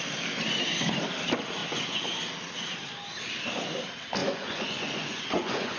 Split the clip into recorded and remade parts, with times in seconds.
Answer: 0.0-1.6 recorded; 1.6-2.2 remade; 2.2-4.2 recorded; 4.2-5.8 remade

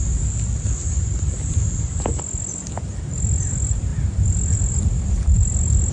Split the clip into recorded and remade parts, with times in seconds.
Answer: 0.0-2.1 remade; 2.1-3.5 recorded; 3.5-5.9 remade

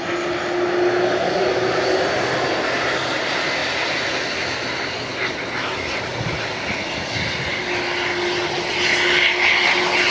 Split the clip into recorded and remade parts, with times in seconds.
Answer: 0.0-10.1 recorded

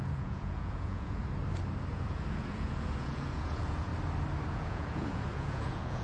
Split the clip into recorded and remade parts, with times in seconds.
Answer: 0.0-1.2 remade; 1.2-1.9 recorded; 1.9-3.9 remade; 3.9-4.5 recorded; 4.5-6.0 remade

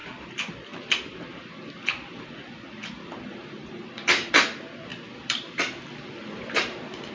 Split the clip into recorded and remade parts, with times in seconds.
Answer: 0.0-4.3 remade; 4.3-4.9 recorded; 4.9-7.1 remade